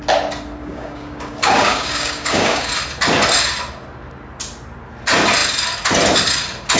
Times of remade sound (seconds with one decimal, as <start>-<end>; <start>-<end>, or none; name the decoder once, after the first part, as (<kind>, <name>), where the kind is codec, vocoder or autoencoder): 0.6-2.7 (codec, DAC)